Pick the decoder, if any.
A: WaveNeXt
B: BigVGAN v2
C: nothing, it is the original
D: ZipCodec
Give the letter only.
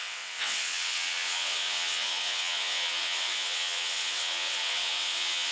A